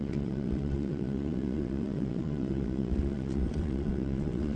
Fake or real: fake